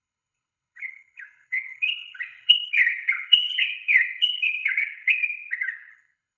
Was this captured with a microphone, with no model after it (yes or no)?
no